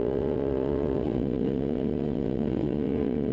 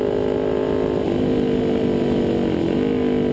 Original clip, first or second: second